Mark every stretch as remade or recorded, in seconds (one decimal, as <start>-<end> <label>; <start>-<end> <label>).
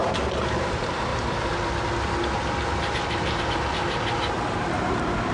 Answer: 0.0-0.6 recorded; 0.6-1.1 remade; 1.1-4.3 recorded; 4.3-5.3 remade